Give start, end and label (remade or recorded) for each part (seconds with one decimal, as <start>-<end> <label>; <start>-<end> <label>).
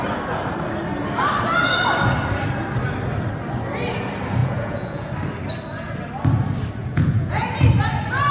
0.0-4.4 recorded; 4.4-5.1 remade; 5.1-6.8 recorded; 6.8-7.4 remade; 7.4-8.3 recorded